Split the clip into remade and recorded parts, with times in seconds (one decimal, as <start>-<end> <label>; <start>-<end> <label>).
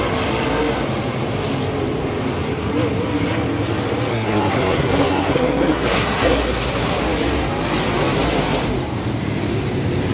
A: 0.0-4.1 recorded; 4.1-7.0 remade; 7.0-10.1 recorded